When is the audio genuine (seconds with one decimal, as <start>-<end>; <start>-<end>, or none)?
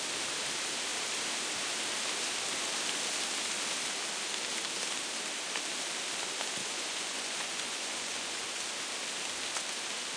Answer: 0.0-6.6; 8.6-10.2